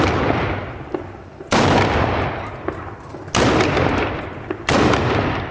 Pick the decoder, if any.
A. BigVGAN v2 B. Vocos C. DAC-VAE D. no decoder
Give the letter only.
A